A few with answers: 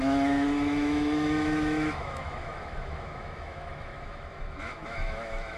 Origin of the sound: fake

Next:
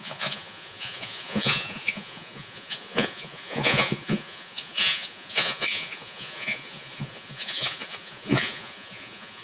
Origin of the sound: fake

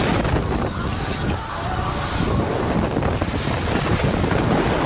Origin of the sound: real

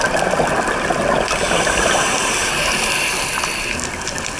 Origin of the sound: real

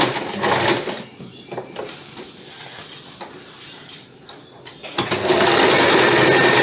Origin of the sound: real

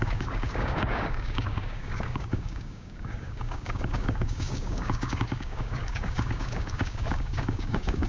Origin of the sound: fake